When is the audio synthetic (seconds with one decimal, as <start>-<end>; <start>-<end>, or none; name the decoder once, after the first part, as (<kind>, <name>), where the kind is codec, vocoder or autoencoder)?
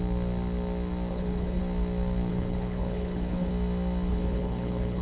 1.1-1.6 (codec, HILCodec); 2.3-3.5; 4.1-5.0